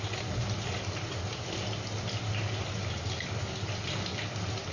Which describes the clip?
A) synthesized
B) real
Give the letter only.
B